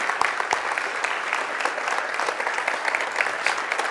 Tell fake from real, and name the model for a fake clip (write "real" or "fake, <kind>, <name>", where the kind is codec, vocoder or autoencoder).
real